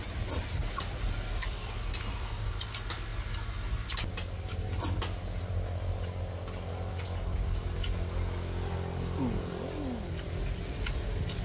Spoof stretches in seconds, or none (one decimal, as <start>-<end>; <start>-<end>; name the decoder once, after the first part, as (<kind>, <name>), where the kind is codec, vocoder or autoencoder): none

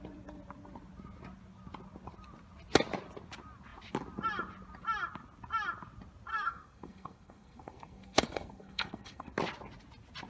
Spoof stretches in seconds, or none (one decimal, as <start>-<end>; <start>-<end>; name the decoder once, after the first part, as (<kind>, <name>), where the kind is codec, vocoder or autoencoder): 6.3-9.3 (codec, SNAC)

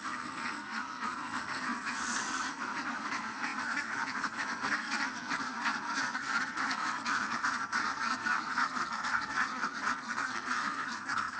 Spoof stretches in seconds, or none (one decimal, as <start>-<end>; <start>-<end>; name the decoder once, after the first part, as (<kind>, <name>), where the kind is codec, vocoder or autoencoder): 0.0-11.4 (codec, SNAC)

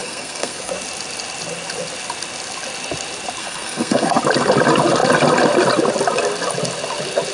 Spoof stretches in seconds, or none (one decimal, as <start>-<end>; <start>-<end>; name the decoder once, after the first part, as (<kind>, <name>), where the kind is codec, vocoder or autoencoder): 0.0-0.7 (codec, SNAC); 3.4-4.2

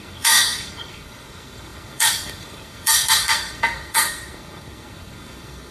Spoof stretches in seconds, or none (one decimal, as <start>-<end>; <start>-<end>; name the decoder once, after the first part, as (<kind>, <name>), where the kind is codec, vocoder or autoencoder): 0.0-5.7 (codec, SNAC)

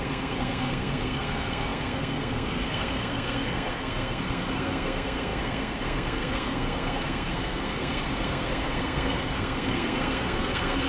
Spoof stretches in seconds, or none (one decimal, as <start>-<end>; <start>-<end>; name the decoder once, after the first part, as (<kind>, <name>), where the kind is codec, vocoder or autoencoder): 0.0-10.9 (codec, SNAC)